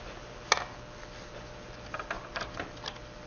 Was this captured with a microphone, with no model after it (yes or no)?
yes